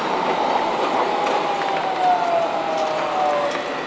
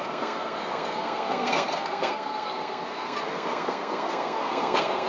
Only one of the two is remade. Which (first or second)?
second